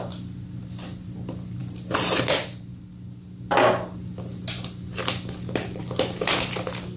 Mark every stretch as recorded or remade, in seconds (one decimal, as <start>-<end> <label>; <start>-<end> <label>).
0.0-7.0 recorded